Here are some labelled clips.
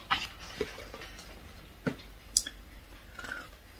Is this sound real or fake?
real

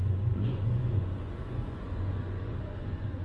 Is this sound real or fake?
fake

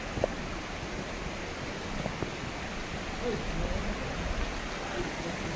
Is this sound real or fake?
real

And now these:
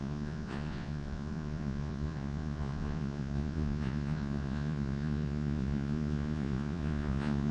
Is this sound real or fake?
fake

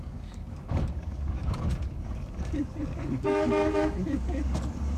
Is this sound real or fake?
fake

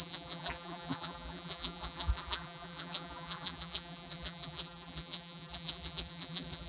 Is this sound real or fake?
fake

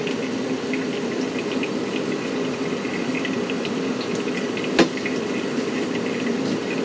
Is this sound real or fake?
real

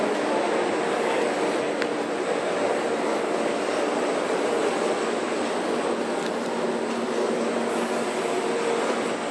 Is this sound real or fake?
real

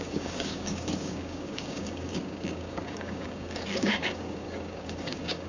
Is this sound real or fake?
fake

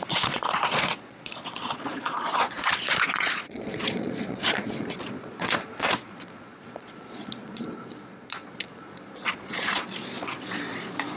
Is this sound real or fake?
fake